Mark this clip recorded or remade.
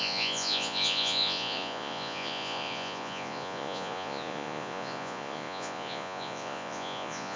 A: remade